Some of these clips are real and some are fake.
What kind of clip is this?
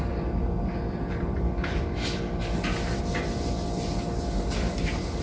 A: real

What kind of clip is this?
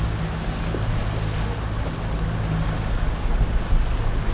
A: real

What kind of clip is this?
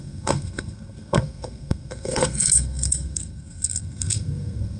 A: fake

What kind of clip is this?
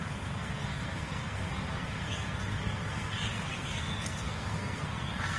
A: fake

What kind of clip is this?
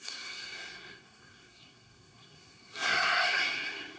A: fake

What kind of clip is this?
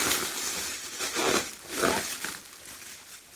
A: real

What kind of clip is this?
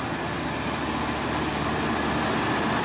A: real